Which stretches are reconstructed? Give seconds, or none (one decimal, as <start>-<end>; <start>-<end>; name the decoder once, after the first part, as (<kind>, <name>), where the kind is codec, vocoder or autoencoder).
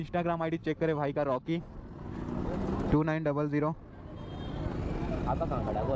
none